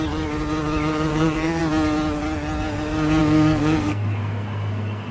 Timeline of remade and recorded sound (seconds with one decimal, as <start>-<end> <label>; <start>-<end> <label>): 0.0-1.1 recorded; 1.1-1.6 remade; 1.6-3.2 recorded; 3.2-5.1 remade